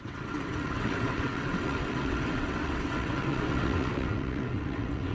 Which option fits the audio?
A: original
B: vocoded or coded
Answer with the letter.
B